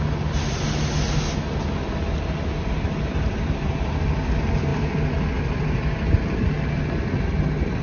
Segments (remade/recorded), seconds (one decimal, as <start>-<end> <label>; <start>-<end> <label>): 0.0-7.8 recorded